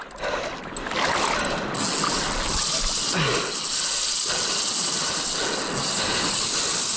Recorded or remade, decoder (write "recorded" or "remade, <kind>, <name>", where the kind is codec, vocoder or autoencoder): recorded